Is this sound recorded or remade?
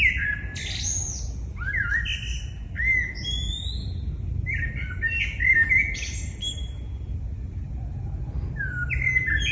recorded